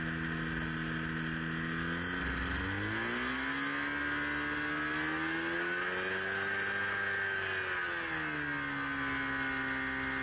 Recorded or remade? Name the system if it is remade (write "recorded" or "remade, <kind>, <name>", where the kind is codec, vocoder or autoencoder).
recorded